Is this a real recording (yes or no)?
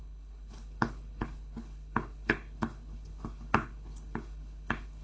no